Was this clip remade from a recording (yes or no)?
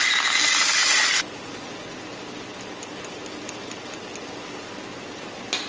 no